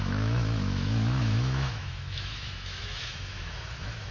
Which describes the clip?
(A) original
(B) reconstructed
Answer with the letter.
B